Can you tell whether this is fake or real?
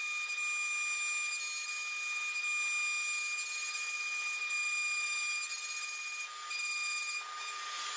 real